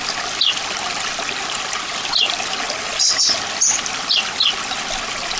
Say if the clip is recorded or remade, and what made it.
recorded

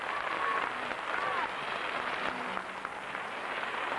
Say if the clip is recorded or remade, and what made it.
recorded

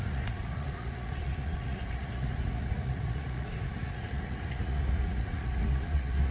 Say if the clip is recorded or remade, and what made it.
remade, vocoder, Vocos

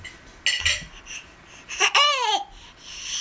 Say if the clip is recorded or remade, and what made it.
recorded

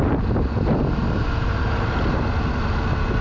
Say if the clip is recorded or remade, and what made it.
recorded